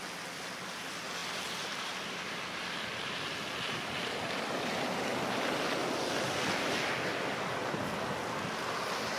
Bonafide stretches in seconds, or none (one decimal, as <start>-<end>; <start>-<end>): 0.0-1.2; 5.1-5.8; 7.1-9.2